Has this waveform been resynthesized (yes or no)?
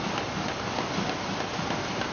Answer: no